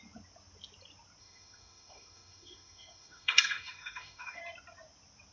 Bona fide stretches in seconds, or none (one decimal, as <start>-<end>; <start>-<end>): 0.0-1.2; 4.4-5.3